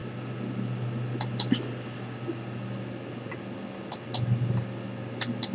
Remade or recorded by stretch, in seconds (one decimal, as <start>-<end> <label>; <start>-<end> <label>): 0.0-5.5 recorded